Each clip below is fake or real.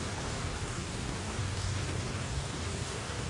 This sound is fake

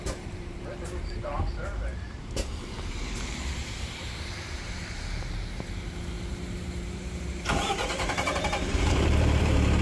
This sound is fake